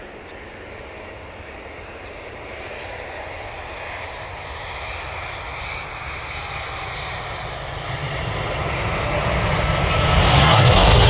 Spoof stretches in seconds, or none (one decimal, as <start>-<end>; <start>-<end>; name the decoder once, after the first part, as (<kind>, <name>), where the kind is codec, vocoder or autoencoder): 10.3-11.1 (codec, SNAC)